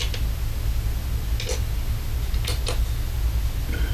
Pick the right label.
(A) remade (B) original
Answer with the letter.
B